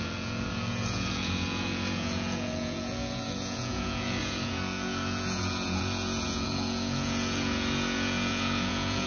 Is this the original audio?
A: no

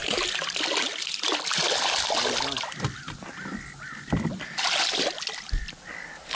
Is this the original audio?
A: yes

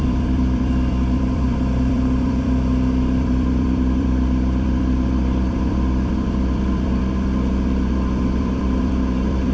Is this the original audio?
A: no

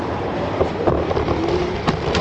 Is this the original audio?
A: yes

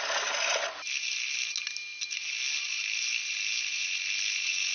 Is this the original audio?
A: yes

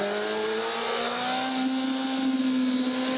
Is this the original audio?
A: yes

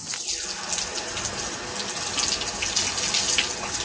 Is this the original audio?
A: yes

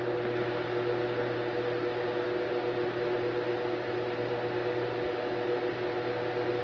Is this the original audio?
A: yes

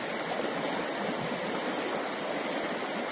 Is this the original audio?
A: yes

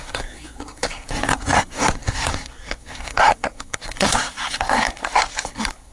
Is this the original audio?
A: no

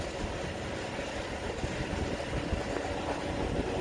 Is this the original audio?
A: yes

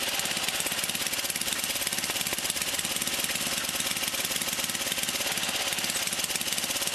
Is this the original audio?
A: yes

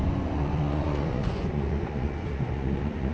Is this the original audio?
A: no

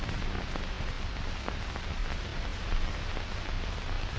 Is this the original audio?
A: yes